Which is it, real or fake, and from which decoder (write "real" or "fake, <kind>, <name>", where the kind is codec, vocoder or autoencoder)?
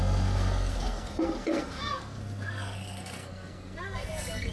fake, codec, SNAC